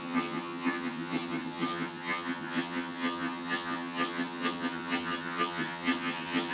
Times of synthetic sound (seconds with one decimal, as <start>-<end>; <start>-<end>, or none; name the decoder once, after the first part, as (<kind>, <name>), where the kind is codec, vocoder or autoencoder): 0.0-6.5 (vocoder, HiFi-GAN)